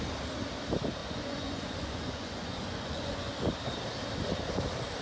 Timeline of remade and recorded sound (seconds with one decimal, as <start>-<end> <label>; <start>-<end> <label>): 0.0-1.0 recorded; 1.0-3.3 remade; 3.3-5.0 recorded